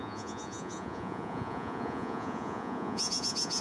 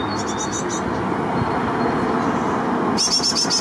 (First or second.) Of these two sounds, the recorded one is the second